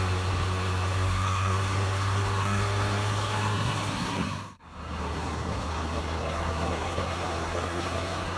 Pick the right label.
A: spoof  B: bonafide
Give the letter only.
A